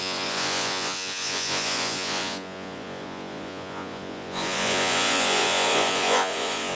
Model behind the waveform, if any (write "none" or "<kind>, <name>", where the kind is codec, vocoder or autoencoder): vocoder, Vocos